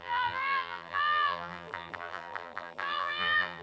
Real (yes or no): no